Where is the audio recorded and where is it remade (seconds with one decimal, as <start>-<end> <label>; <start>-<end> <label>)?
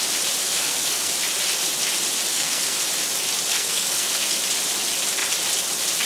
0.0-0.4 recorded; 0.4-1.1 remade; 1.1-2.3 recorded; 2.3-2.8 remade; 2.8-3.5 recorded; 3.5-4.4 remade; 4.4-6.1 recorded